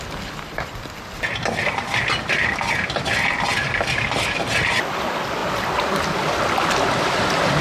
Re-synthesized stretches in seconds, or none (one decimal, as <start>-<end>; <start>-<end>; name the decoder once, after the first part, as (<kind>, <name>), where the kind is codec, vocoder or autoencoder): none